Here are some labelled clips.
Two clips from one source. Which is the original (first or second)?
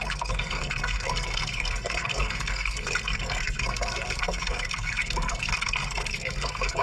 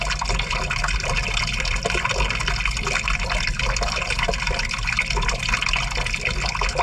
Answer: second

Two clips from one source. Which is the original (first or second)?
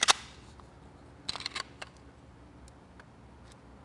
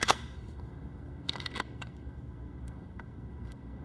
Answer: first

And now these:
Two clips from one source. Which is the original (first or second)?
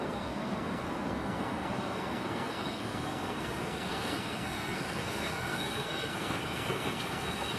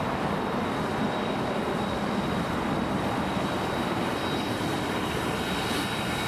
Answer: second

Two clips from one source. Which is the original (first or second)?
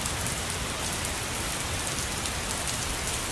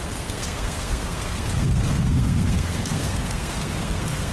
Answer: first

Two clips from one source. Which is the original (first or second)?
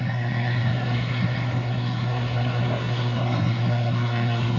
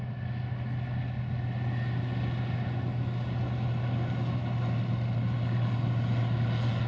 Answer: second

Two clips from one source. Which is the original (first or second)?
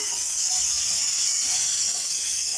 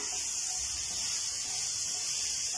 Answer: second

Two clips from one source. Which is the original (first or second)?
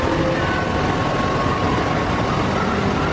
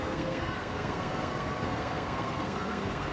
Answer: first